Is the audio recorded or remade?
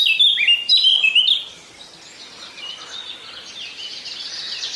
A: recorded